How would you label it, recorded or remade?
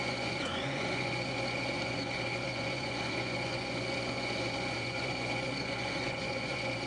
remade